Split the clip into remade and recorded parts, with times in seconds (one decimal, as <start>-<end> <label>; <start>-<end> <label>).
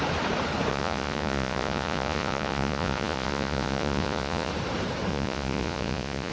0.0-0.7 recorded; 0.7-4.5 remade; 4.5-5.1 recorded; 5.1-6.3 remade